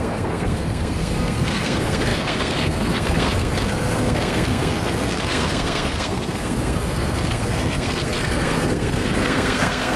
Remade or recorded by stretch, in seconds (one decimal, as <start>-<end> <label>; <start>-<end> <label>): 0.0-10.0 remade